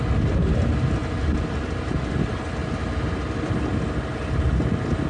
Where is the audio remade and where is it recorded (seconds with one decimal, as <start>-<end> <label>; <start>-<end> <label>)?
0.0-5.1 recorded